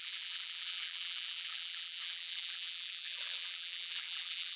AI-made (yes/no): yes